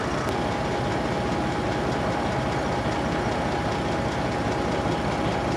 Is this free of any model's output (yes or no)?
yes